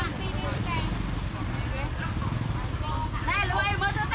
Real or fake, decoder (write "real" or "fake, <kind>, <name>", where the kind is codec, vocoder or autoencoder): real